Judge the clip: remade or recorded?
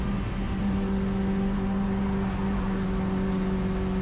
recorded